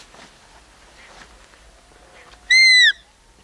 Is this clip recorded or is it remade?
recorded